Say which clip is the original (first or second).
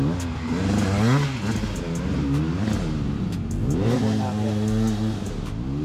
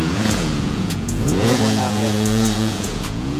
first